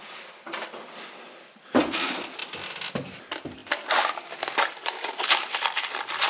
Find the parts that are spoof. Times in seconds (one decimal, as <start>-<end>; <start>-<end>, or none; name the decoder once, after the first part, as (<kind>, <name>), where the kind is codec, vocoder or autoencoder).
none